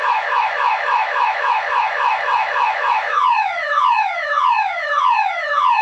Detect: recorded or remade remade